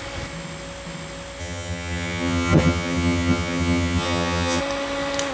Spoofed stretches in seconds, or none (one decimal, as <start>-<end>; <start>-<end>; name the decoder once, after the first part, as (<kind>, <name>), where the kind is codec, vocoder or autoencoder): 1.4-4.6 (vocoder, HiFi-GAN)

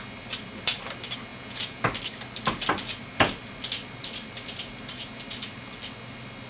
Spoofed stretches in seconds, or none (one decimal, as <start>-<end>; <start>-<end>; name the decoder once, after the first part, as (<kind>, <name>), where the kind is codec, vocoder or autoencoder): 1.3-1.8 (vocoder, Vocos)

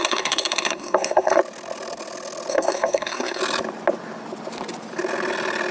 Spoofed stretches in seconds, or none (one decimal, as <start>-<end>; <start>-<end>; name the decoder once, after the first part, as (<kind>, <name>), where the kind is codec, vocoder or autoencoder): 0.0-1.4 (codec, SNAC); 2.5-3.4